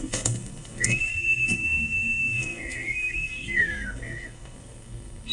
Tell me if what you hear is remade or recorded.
remade